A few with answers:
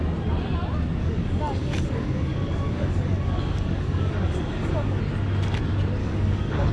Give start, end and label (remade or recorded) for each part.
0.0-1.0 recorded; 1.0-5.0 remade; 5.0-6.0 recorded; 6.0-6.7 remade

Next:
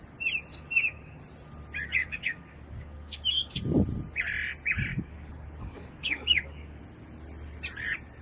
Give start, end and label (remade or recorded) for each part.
0.0-0.5 recorded; 0.5-1.2 remade; 1.2-2.0 recorded; 2.0-3.6 remade; 3.6-4.9 recorded; 4.9-6.8 remade; 6.8-8.2 recorded

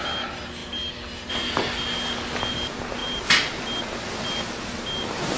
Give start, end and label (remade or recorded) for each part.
0.0-5.4 recorded